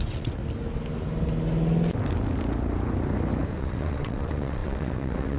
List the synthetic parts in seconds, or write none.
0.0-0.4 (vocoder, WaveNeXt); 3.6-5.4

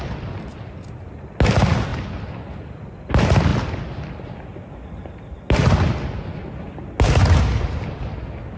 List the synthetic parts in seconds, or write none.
none